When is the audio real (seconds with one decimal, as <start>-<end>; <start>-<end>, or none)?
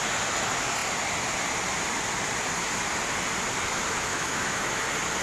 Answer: 0.0-4.1; 4.8-5.2